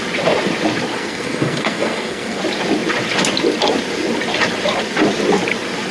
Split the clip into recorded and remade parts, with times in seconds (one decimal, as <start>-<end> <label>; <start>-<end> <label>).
0.0-0.9 recorded; 0.9-2.4 remade; 2.4-5.9 recorded